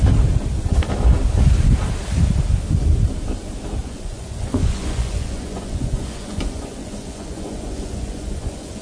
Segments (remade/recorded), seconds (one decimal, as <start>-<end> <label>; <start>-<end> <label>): 0.0-3.8 recorded; 3.8-8.8 remade